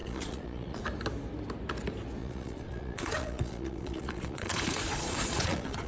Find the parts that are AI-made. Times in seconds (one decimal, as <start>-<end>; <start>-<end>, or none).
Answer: 0.0-0.8; 2.2-5.9